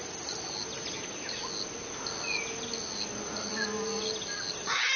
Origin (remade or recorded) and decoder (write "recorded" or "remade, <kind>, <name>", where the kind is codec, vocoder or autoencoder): recorded